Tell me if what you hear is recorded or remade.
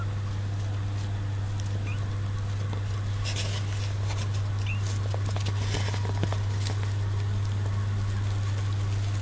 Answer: recorded